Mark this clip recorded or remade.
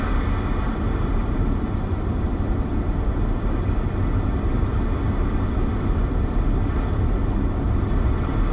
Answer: recorded